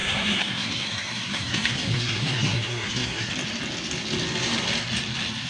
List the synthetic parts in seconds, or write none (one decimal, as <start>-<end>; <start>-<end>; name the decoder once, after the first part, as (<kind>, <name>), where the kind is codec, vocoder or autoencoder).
0.0-3.3 (codec, SNAC)